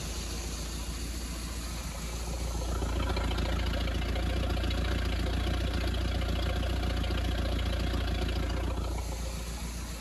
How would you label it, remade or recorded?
recorded